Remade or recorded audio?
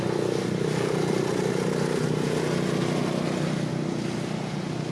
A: recorded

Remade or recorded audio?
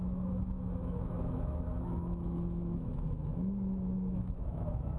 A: remade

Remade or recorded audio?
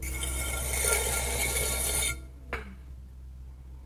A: recorded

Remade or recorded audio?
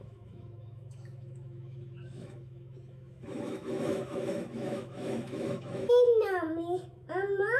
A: remade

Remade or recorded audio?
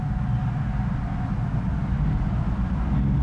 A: recorded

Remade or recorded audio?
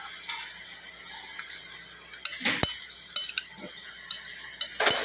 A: recorded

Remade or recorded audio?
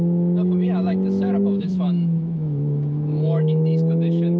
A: remade